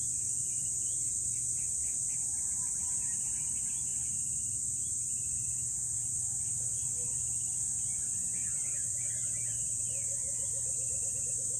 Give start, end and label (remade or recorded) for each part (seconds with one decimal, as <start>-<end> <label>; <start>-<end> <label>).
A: 0.0-11.6 recorded